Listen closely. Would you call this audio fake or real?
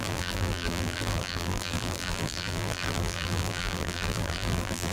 fake